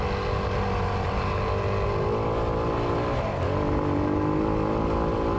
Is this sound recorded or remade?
recorded